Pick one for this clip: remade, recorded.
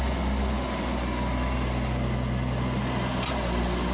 recorded